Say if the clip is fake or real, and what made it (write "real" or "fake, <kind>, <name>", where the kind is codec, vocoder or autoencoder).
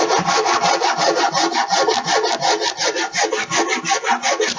fake, vocoder, BigVGAN v2